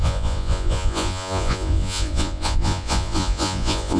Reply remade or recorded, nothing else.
remade